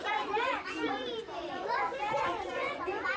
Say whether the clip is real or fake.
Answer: fake